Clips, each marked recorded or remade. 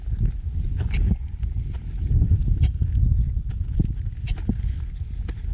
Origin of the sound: recorded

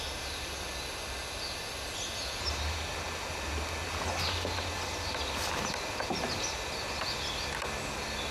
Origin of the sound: recorded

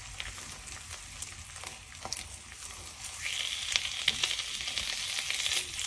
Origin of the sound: recorded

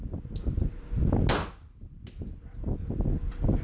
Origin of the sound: recorded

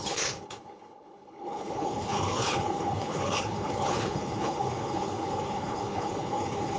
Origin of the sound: remade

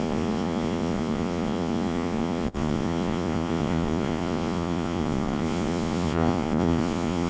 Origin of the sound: remade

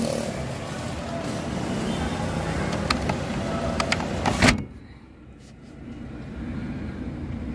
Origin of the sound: recorded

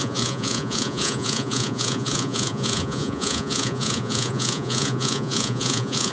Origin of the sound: remade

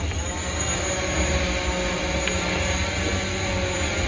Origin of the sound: recorded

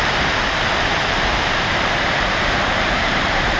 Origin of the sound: remade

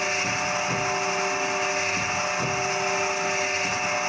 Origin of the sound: recorded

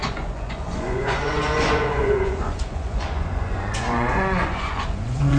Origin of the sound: remade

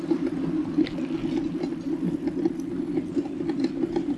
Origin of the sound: recorded